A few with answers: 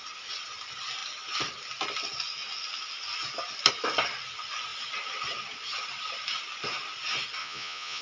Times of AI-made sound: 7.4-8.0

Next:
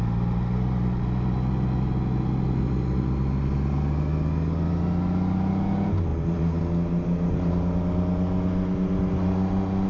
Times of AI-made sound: none

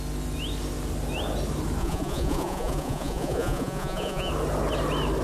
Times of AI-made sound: 1.8-4.3